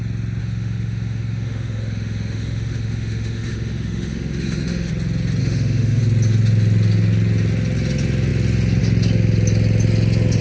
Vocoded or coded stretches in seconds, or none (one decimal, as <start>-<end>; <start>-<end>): 0.4-4.9; 5.4-6.0